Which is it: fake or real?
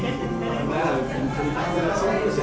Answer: real